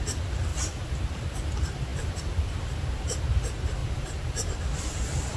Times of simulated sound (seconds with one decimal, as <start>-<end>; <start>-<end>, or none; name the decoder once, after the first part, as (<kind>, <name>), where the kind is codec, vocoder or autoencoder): 0.5-1.5 (vocoder, BigVGAN v2); 1.9-2.9; 3.8-5.4